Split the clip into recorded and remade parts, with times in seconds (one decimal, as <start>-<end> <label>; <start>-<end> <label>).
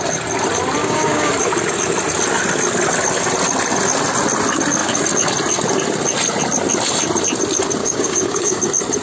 0.0-0.8 recorded; 0.8-1.3 remade; 1.3-7.8 recorded; 7.8-8.6 remade; 8.6-9.0 recorded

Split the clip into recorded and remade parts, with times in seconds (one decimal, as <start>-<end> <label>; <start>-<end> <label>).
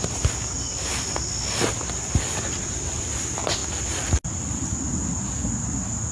0.0-6.1 recorded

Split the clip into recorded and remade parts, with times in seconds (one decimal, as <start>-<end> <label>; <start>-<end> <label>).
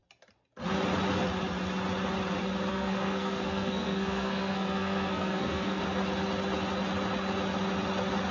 0.0-2.7 recorded; 2.7-5.8 remade; 5.8-8.3 recorded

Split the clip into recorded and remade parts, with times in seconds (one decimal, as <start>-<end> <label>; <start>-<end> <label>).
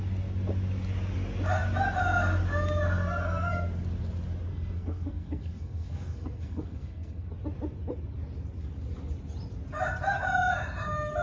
0.0-4.5 recorded; 4.5-7.3 remade; 7.3-11.2 recorded